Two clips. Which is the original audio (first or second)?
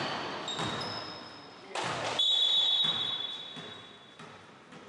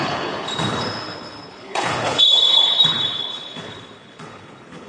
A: first